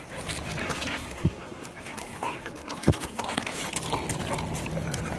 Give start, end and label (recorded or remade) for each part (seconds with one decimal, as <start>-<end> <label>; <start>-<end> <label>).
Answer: 0.0-0.6 recorded; 0.6-3.6 remade; 3.6-5.2 recorded